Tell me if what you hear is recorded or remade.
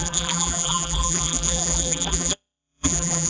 remade